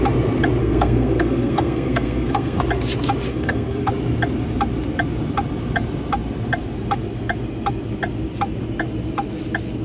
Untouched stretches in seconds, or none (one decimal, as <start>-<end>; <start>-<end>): 0.0-0.6; 2.6-3.3; 3.9-9.8